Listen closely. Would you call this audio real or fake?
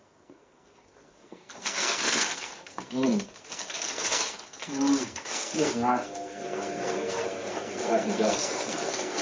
fake